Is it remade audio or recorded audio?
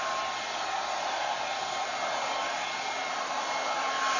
recorded